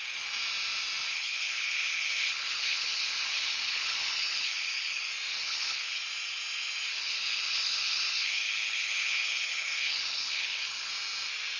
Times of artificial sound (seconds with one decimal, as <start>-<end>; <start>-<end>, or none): 1.1-5.0; 5.4-6.0; 6.9-10.9